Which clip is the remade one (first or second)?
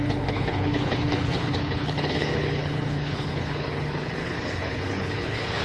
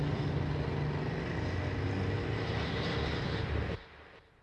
first